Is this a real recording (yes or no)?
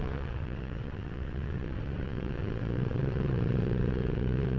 no